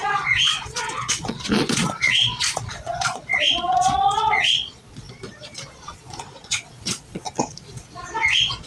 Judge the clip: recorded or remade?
remade